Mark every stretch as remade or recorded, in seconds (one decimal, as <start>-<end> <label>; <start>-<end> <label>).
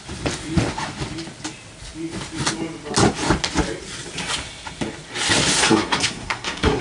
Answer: 0.0-5.6 recorded; 5.6-6.8 remade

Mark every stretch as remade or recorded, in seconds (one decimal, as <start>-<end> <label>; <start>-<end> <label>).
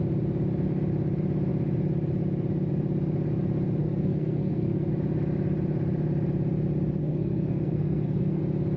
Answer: 0.0-3.8 recorded; 3.8-4.9 remade; 4.9-7.0 recorded; 7.0-8.4 remade; 8.4-8.8 recorded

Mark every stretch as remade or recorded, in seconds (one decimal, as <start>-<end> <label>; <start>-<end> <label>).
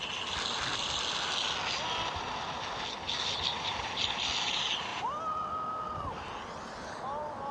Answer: 0.0-7.5 recorded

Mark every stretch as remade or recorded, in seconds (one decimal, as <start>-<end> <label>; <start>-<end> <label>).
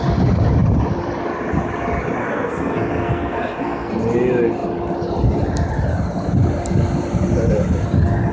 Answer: 0.0-2.2 recorded; 2.2-3.9 remade; 3.9-8.3 recorded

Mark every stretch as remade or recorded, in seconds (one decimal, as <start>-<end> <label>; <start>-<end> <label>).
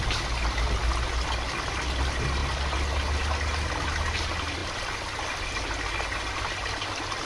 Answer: 0.0-7.3 recorded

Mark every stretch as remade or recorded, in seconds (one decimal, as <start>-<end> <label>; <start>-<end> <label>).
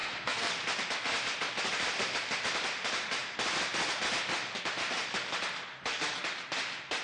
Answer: 0.0-0.5 remade; 0.5-7.0 recorded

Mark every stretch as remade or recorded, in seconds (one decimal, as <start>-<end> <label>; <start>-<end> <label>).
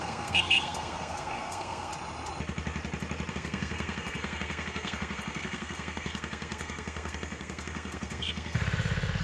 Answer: 0.0-1.9 remade; 1.9-3.3 recorded; 3.3-8.6 remade; 8.6-9.2 recorded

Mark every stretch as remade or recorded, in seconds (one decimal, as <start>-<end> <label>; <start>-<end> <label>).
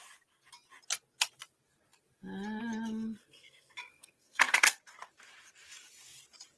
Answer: 0.0-3.2 recorded; 3.2-4.8 remade; 4.8-6.6 recorded